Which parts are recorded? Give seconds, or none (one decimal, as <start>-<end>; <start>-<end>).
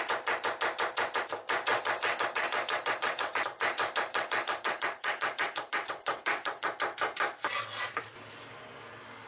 0.0-1.7; 3.4-4.1; 6.7-9.3